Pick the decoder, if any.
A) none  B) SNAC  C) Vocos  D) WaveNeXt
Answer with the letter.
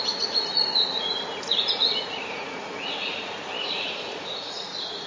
C